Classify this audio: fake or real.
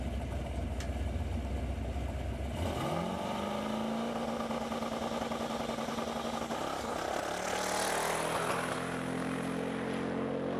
real